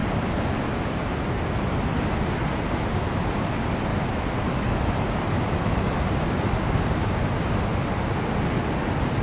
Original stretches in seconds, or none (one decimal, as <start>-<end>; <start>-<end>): 0.0-9.2